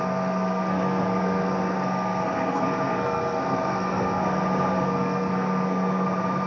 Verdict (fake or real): fake